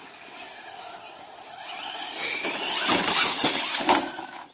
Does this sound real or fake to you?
real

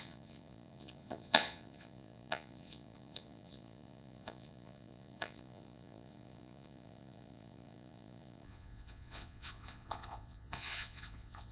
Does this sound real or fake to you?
fake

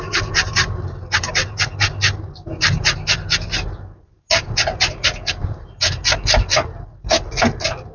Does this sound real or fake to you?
real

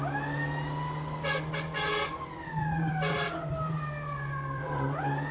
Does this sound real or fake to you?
real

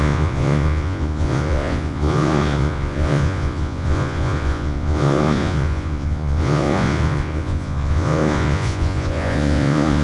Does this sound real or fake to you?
fake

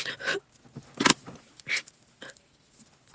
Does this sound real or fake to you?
real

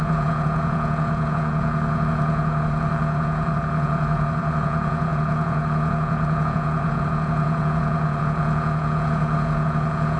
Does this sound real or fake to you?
fake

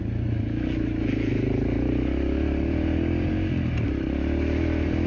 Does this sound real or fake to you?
real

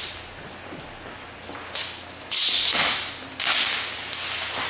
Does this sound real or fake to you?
real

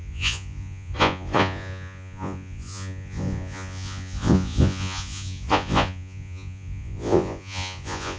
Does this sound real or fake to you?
fake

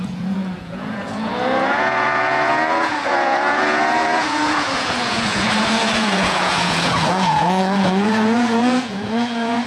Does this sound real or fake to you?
fake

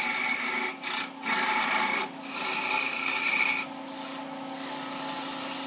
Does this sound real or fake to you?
real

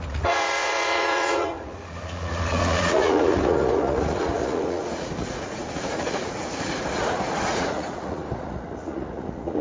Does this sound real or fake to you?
fake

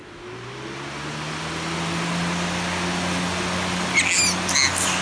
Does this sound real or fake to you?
real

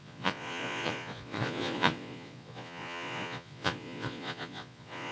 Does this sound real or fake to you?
fake